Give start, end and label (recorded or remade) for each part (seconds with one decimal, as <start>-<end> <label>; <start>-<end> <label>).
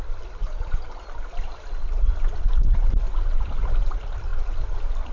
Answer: 0.0-0.4 recorded; 0.4-3.1 remade; 3.1-5.1 recorded